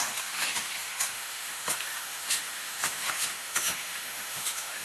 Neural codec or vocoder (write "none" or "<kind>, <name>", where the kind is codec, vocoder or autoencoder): autoencoder, DAC-VAE